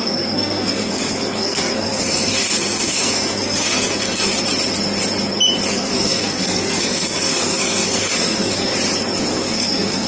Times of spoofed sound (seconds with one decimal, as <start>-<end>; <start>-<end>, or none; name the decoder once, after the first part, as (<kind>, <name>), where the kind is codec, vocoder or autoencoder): 0.0-4.3 (codec, SNAC); 5.7-8.7; 9.3-10.1